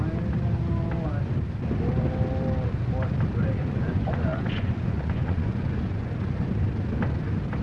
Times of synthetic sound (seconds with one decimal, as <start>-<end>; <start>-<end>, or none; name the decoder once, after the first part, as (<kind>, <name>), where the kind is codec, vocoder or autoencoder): 3.6-6.1 (vocoder, Vocos)